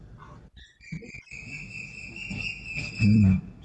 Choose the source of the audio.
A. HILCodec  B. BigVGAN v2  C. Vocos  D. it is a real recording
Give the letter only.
D